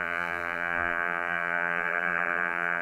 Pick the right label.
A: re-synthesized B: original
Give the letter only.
A